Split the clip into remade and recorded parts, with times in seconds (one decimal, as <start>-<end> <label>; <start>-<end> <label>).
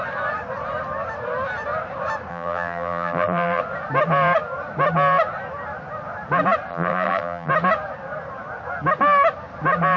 0.0-2.3 recorded; 2.3-3.6 remade; 3.6-6.7 recorded; 6.7-7.5 remade; 7.5-10.0 recorded